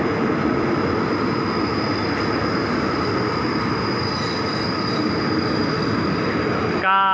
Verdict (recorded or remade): recorded